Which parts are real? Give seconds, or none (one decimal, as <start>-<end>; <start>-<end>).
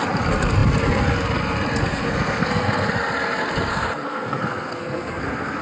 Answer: 0.0-1.8; 2.9-3.7